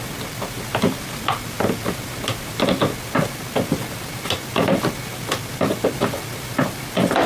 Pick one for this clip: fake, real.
real